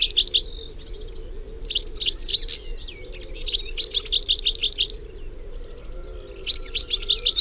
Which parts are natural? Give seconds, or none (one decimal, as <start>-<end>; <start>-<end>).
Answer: 0.0-7.4